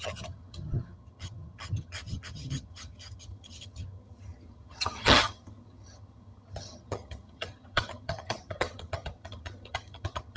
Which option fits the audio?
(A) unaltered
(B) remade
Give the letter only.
B